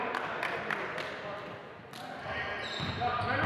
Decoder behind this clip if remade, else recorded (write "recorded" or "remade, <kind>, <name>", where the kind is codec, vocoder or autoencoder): recorded